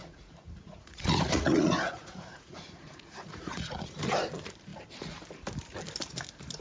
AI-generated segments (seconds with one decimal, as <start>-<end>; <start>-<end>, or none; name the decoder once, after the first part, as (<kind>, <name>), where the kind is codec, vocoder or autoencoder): 0.0-4.0 (vocoder, Vocos)